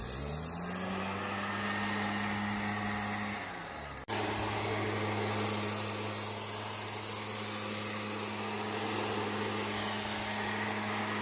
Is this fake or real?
real